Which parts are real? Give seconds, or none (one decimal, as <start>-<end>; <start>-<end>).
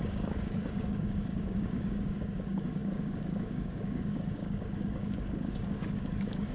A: none